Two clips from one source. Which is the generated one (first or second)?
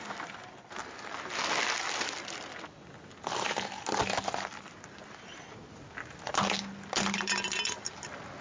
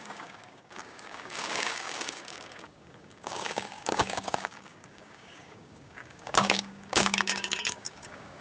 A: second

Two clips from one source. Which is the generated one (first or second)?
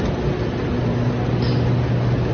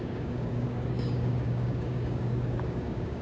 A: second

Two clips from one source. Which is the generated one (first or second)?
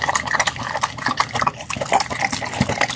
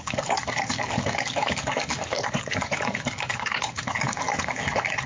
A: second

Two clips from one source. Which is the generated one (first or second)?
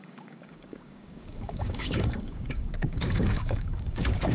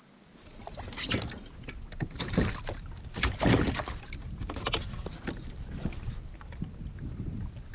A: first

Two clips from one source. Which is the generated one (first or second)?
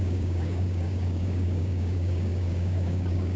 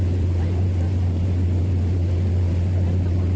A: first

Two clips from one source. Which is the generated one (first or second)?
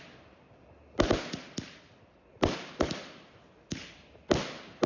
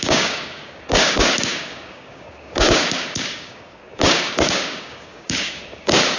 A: second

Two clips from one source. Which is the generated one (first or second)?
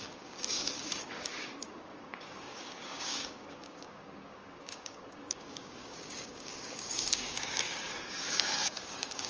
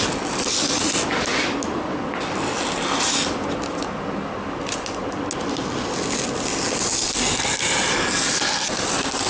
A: first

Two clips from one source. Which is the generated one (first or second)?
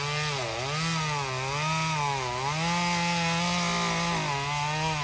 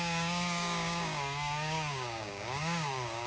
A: second